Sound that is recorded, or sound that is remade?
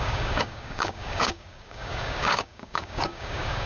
remade